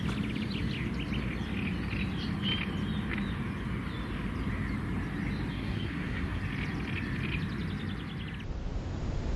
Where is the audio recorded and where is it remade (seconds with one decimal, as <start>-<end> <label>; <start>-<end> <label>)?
0.0-5.5 recorded; 5.5-6.4 remade; 6.4-9.4 recorded